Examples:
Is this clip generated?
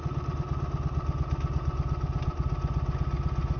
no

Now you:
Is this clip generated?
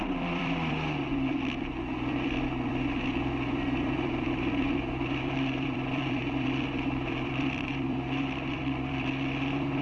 yes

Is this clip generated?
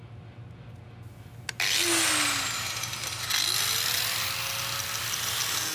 no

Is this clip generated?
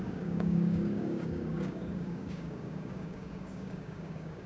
yes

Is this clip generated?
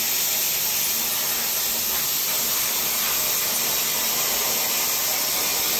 no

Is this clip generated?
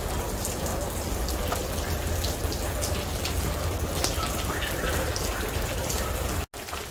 no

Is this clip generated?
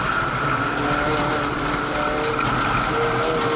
no